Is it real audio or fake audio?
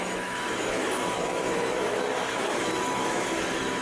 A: fake